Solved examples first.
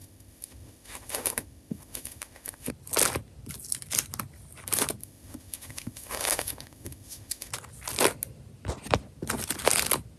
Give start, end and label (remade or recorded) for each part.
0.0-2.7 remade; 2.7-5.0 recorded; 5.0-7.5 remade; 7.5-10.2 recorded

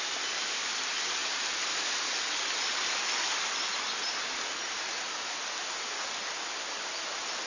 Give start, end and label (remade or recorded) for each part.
0.0-7.5 recorded

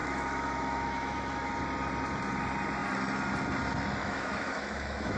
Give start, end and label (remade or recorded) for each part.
0.0-1.5 remade; 1.5-4.0 recorded; 4.0-5.2 remade

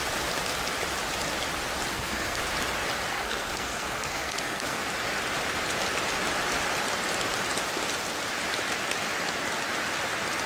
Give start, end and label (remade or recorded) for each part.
0.0-1.9 recorded; 1.9-2.4 remade; 2.4-3.1 recorded; 3.1-4.8 remade; 4.8-10.5 recorded

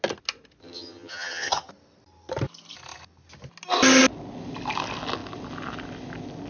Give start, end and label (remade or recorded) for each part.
0.0-0.6 recorded; 0.6-1.7 remade; 1.7-6.5 recorded

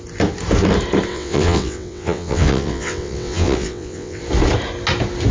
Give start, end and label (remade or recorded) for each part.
0.0-1.1 recorded; 1.1-4.2 remade; 4.2-5.3 recorded

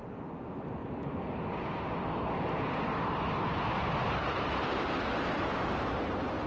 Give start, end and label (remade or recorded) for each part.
0.0-0.8 recorded; 0.8-1.6 remade; 1.6-4.2 recorded; 4.2-5.9 remade; 5.9-6.5 recorded

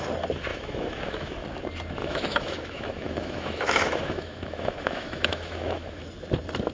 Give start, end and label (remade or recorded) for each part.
0.0-0.5 recorded; 0.5-1.3 remade; 1.3-2.0 recorded; 2.0-6.0 remade; 6.0-6.7 recorded